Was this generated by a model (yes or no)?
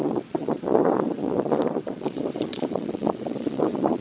yes